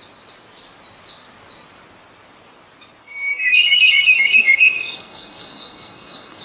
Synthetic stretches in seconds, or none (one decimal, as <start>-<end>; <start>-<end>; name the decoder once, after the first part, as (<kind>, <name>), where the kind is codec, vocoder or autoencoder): 3.0-6.4 (codec, SNAC)